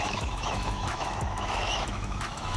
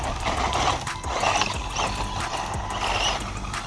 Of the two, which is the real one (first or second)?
second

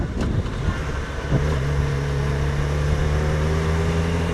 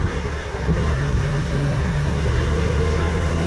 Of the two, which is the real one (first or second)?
first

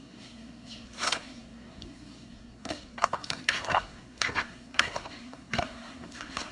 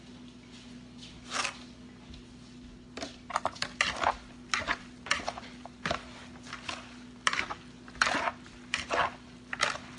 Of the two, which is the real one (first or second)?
second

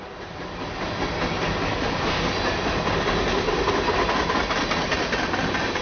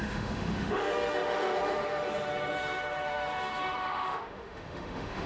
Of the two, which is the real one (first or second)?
first